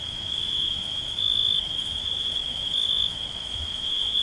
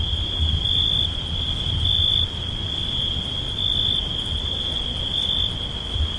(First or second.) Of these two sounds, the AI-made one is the first